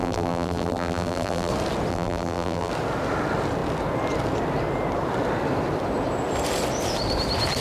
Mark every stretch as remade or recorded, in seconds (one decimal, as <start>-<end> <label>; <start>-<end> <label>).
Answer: 0.0-1.5 remade; 1.5-1.9 recorded; 1.9-2.7 remade; 2.7-7.6 recorded